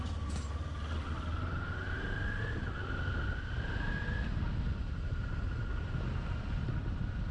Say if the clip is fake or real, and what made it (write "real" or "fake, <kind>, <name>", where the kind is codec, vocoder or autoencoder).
real